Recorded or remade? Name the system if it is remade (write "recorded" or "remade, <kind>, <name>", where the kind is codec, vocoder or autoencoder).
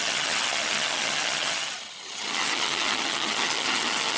remade, vocoder, HiFi-GAN